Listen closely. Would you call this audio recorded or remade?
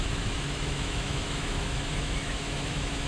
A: remade